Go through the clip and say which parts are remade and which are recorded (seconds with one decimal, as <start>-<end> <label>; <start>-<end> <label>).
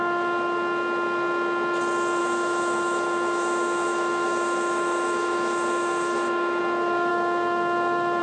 0.0-2.2 recorded; 2.2-6.6 remade; 6.6-7.1 recorded; 7.1-8.2 remade